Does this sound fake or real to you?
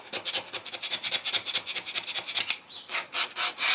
real